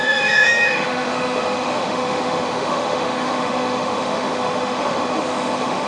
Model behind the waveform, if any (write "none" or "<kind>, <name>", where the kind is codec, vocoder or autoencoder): autoencoder, DAC-VAE